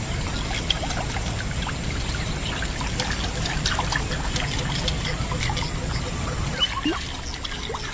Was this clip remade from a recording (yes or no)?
no